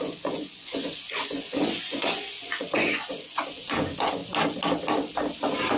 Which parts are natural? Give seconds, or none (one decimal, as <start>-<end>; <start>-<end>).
4.2-5.8